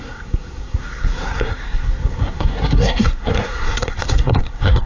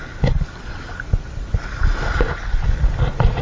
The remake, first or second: first